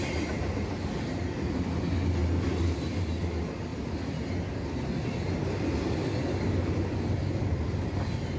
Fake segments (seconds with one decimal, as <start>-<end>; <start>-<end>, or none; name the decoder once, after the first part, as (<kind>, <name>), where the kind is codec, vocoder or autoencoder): none